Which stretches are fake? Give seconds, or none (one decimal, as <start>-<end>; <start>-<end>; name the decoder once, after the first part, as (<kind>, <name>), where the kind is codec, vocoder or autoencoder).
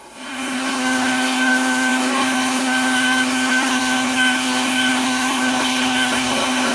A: 0.0-6.7 (codec, SNAC)